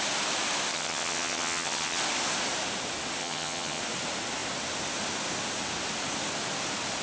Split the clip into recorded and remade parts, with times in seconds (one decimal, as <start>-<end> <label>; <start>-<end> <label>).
0.0-0.7 recorded; 0.7-2.0 remade; 2.0-3.2 recorded; 3.2-3.8 remade; 3.8-7.0 recorded